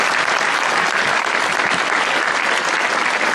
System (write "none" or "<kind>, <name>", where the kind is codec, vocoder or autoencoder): none